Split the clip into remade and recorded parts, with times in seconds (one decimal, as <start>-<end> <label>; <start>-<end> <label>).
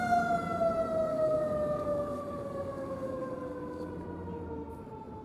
0.0-1.1 recorded; 1.1-3.9 remade; 3.9-5.2 recorded